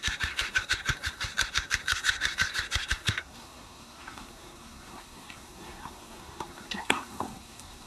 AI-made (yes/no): yes